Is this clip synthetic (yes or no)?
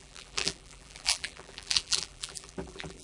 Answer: yes